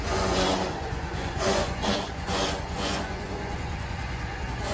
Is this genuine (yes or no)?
no